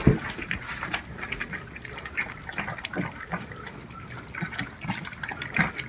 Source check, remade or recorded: recorded